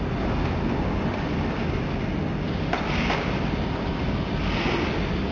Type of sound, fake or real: real